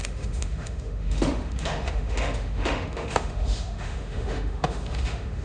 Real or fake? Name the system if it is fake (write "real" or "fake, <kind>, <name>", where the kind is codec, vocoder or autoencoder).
fake, autoencoder, DAC-VAE